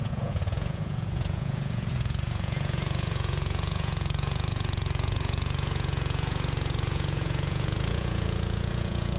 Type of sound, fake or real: fake